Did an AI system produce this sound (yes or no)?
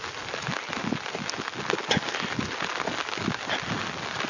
no